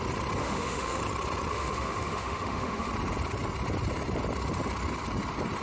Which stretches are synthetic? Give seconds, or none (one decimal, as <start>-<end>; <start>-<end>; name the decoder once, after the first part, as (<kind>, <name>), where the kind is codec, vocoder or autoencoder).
0.4-1.0 (autoencoder, DAC-VAE); 1.5-2.9